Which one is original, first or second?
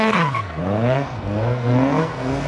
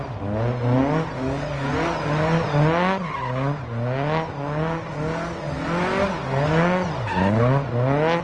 second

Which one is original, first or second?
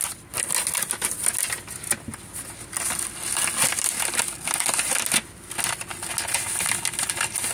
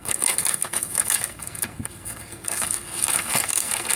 first